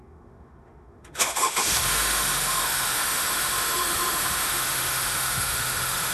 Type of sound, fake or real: fake